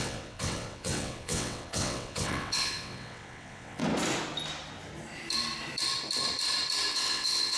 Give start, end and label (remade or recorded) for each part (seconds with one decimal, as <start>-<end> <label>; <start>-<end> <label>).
0.0-3.8 remade; 3.8-6.9 recorded; 6.9-7.6 remade